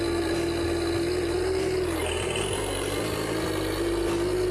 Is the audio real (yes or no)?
yes